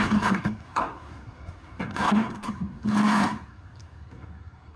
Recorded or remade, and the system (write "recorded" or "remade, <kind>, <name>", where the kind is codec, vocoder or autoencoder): remade, codec, SNAC